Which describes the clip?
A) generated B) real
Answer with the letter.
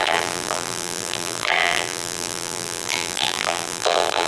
A